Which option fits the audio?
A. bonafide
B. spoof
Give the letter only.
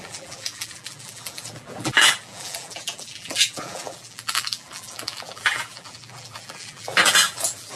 B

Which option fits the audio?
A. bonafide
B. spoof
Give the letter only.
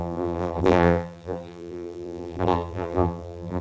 B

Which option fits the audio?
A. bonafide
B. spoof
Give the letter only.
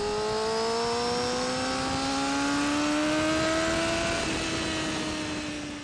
A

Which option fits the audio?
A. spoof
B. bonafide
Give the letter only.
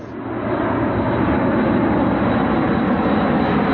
B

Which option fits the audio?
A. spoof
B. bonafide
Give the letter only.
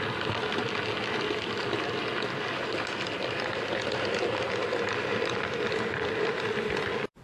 B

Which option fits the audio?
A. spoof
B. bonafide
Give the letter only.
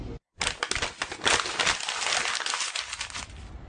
B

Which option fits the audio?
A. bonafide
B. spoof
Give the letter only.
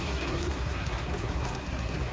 B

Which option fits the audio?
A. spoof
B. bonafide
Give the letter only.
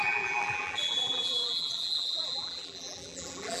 A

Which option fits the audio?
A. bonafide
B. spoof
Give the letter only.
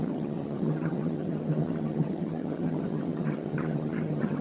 B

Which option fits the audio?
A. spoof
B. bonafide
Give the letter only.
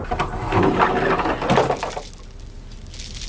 B